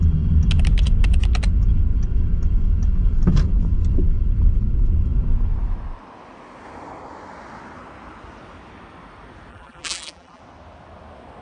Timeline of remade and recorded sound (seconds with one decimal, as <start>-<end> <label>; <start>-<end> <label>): 0.0-9.5 recorded; 9.5-10.4 remade; 10.4-11.4 recorded